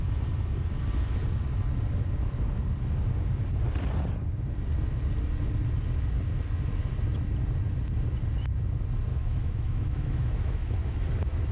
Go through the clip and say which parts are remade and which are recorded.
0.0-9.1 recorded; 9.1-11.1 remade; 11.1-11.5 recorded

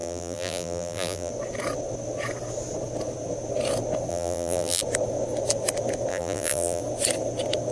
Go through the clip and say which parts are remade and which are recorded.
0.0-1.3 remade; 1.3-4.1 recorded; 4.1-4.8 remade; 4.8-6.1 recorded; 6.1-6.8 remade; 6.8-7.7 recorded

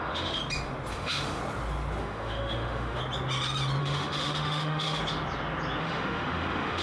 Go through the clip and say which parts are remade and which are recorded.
0.0-0.4 remade; 0.4-0.9 recorded; 0.9-1.4 remade; 1.4-2.0 recorded; 2.0-3.0 remade; 3.0-3.8 recorded; 3.8-5.0 remade; 5.0-5.8 recorded; 5.8-6.8 remade

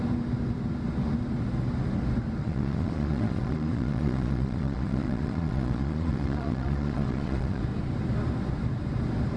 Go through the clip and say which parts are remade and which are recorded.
0.0-2.4 recorded; 2.4-7.6 remade; 7.6-9.4 recorded

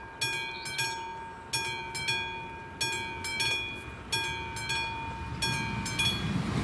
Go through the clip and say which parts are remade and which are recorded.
0.0-6.6 recorded